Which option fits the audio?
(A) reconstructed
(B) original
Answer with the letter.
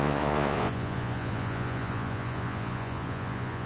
A